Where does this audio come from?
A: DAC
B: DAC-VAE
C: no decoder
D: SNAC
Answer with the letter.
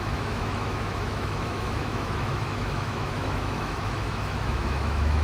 B